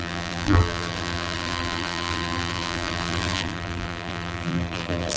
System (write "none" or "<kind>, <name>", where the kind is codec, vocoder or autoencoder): vocoder, BigVGAN v2